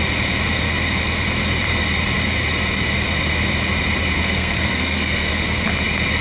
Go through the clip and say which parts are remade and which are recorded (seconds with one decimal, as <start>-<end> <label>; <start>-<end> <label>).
0.0-4.2 recorded; 4.2-5.3 remade; 5.3-6.2 recorded